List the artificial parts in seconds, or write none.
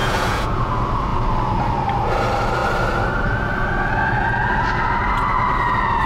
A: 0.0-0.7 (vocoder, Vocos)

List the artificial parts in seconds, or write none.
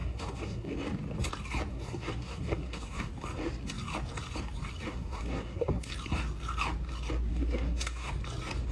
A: 0.0-0.7 (codec, SNAC); 1.7-3.1; 4.9-5.9; 7.3-8.1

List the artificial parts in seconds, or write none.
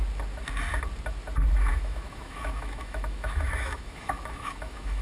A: 1.7-5.0 (autoencoder, DAC-VAE)